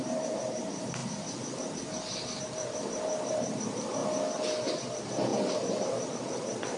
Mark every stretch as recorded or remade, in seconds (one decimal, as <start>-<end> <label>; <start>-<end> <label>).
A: 0.0-1.0 remade; 1.0-2.4 recorded; 2.4-4.0 remade; 4.0-4.7 recorded; 4.7-6.8 remade